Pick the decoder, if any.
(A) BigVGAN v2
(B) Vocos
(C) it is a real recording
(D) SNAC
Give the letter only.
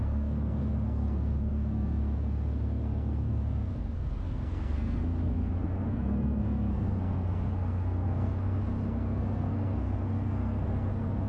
D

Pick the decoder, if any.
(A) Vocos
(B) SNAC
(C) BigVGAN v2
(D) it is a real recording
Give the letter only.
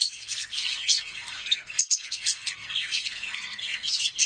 B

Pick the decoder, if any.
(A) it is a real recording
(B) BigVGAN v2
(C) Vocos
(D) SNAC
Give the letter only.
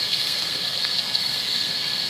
D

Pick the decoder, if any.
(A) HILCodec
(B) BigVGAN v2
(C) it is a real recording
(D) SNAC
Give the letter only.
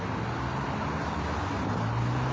C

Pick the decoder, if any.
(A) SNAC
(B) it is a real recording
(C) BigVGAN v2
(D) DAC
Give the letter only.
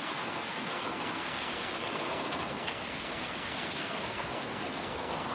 A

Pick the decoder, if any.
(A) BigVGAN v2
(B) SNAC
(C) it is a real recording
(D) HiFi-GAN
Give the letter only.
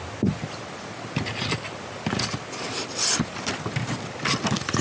C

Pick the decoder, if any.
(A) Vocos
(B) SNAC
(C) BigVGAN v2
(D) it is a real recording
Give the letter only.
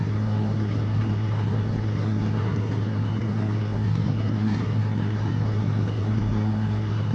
B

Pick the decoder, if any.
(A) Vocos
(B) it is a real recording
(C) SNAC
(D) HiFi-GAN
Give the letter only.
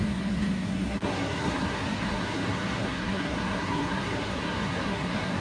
C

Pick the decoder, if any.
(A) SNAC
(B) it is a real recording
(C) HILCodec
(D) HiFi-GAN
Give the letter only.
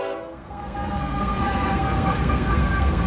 A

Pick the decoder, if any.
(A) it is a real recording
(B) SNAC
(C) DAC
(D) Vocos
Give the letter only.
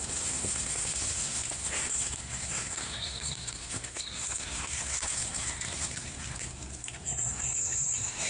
B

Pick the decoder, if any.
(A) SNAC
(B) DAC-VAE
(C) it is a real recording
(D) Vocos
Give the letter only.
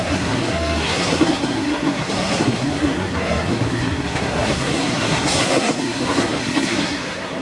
A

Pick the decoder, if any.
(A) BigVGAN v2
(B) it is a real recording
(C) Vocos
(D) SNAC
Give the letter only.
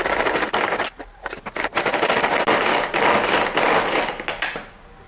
B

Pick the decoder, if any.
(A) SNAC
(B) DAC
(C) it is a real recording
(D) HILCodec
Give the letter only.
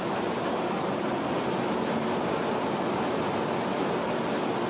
C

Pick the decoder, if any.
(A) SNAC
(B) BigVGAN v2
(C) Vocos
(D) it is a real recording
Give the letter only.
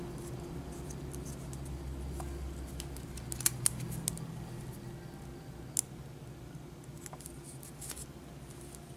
D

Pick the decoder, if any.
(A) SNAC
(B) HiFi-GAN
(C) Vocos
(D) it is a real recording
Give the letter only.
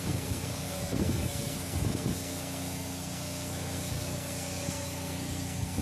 A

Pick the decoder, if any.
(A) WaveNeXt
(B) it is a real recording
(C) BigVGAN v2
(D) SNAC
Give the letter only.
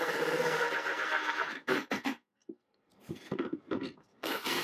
D